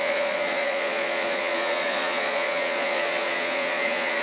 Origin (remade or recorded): remade